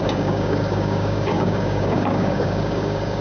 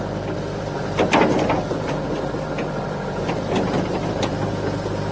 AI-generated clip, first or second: first